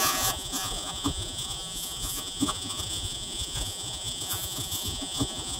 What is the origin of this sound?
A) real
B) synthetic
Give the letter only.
B